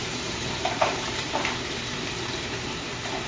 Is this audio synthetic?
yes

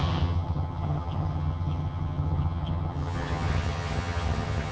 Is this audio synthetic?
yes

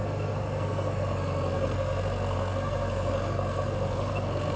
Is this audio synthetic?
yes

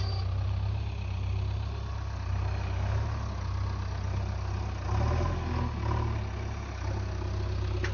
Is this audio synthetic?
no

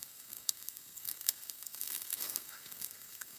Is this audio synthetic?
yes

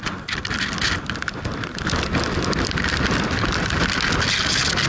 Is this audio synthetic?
no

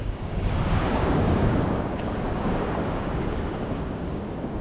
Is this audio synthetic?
yes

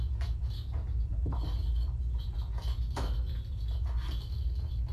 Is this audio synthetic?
no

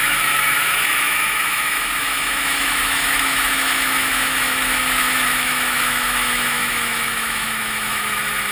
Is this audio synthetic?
yes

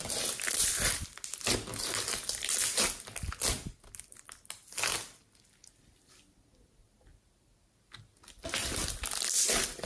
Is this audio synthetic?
no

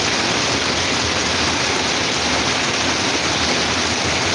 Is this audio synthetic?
no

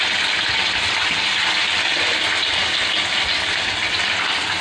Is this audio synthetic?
no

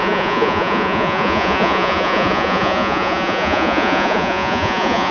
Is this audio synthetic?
yes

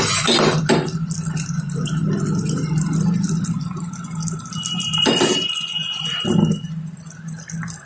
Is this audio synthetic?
no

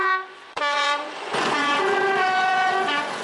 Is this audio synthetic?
yes